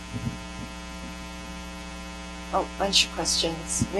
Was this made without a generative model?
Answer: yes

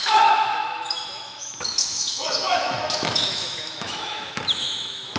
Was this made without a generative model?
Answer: no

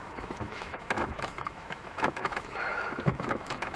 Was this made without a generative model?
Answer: no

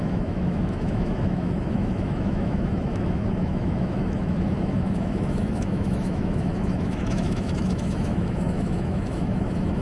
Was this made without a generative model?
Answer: no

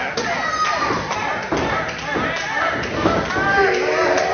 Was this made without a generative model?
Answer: yes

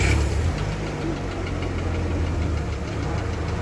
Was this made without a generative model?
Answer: yes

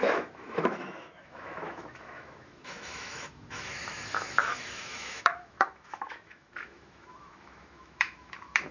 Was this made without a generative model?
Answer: no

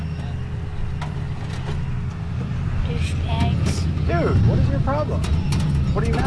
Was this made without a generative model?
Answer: yes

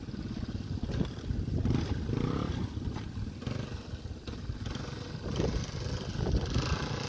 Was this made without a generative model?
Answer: yes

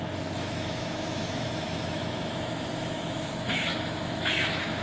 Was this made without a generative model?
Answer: no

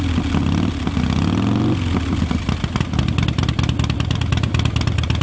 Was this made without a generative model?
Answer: yes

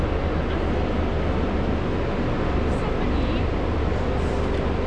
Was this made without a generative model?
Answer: yes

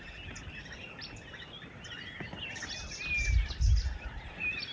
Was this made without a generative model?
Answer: yes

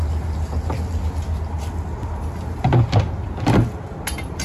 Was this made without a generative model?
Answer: yes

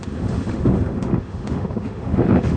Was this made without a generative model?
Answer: no